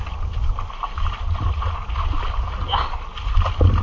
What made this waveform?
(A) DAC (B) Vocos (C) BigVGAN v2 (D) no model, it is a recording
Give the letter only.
D